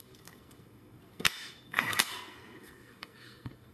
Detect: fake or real fake